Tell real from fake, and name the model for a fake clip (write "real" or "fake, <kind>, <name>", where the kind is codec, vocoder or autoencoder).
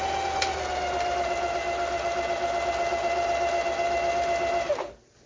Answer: real